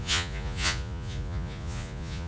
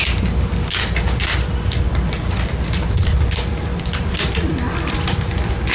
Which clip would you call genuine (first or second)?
second